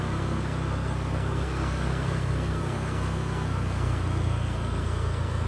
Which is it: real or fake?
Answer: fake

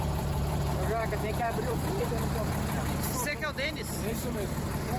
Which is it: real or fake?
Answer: fake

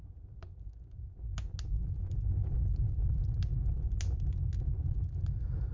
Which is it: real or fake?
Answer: real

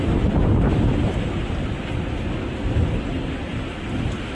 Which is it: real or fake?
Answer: real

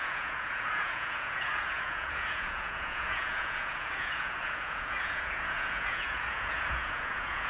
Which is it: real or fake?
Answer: fake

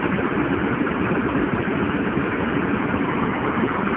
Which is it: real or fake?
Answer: real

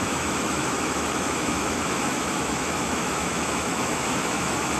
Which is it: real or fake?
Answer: fake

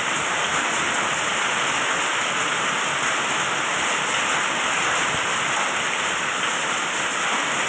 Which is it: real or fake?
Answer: real